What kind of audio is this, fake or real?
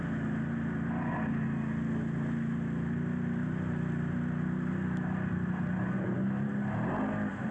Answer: real